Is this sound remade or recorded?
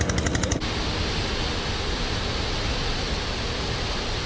recorded